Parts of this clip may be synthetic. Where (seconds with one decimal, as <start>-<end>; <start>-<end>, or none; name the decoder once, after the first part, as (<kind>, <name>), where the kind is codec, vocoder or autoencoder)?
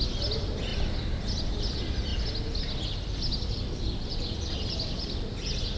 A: none